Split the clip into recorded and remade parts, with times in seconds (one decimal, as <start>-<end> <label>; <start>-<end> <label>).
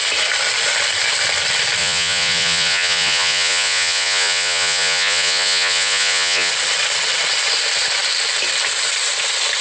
0.0-1.8 recorded; 1.8-6.5 remade; 6.5-9.6 recorded